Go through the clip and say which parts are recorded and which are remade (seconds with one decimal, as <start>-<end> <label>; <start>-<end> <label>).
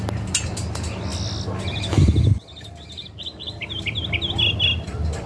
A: 0.0-5.3 recorded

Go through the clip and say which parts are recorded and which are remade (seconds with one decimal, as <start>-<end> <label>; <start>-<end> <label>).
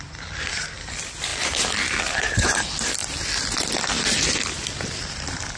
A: 0.0-1.3 remade; 1.3-2.0 recorded; 2.0-5.6 remade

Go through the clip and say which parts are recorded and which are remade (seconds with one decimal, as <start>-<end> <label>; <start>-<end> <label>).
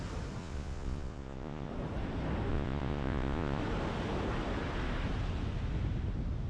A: 0.0-0.4 recorded; 0.4-1.7 remade; 1.7-2.5 recorded; 2.5-3.6 remade; 3.6-6.5 recorded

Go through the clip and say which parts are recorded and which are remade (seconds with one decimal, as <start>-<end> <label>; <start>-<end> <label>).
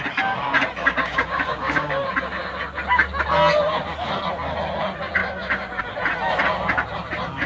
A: 0.0-0.8 recorded; 0.8-1.9 remade; 1.9-5.2 recorded; 5.2-5.8 remade; 5.8-7.5 recorded